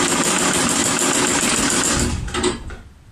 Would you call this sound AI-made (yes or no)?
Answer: no